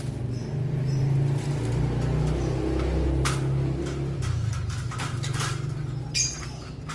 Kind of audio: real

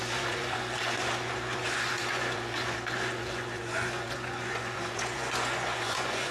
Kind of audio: fake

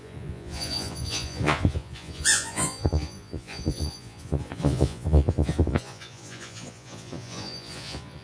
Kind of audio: fake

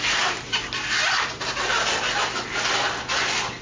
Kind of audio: real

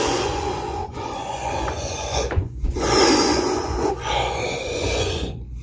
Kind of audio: fake